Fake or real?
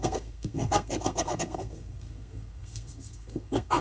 fake